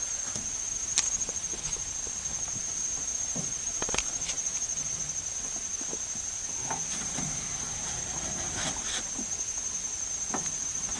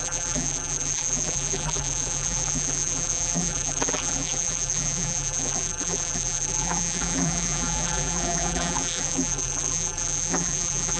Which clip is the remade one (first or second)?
second